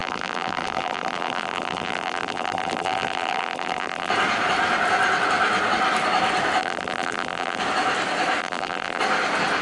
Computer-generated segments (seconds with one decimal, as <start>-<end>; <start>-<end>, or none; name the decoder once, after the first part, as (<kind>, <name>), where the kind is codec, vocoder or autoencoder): 0.0-4.1 (vocoder, BigVGAN v2); 6.6-7.6; 8.4-9.0